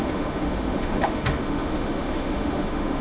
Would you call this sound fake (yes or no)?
yes